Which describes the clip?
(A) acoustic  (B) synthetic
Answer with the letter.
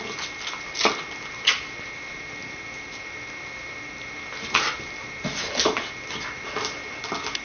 A